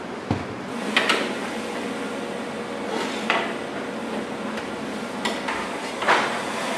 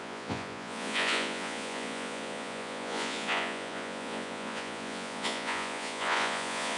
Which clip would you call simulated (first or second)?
second